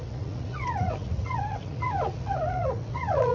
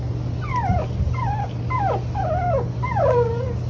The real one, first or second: second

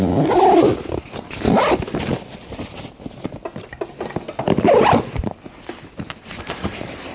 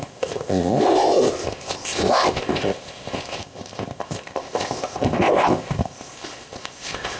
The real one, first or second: first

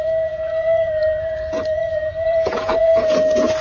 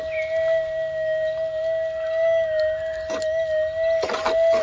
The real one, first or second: second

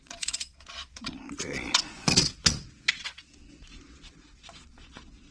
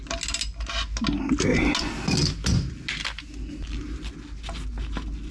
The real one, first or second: second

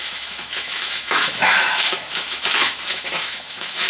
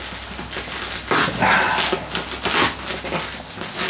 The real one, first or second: second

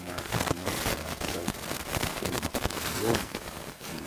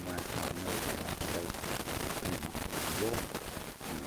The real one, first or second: second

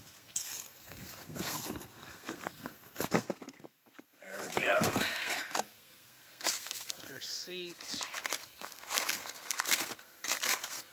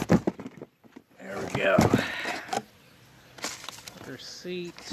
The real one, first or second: second